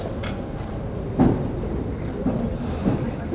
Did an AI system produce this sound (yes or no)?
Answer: no